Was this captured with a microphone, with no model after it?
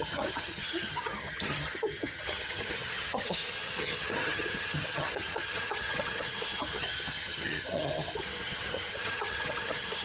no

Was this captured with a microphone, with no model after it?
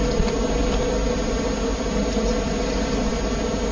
yes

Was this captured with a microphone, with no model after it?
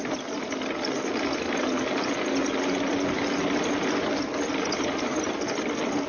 yes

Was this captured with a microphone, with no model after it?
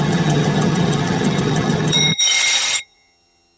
no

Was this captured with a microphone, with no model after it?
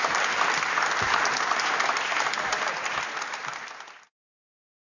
yes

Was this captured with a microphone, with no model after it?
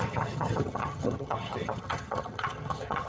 no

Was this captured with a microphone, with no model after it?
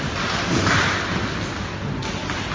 yes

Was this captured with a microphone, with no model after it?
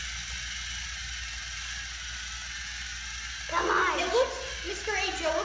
yes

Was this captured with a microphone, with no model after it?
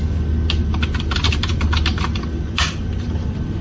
yes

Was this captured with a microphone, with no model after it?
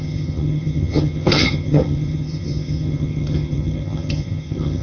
no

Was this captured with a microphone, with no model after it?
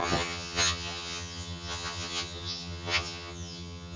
no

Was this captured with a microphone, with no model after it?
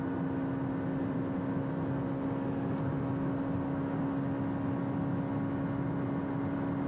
yes